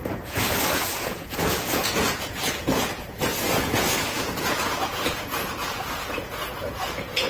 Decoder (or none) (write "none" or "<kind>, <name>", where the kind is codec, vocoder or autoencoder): vocoder, Vocos